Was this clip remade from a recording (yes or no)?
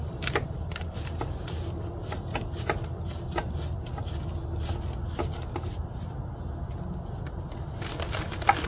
no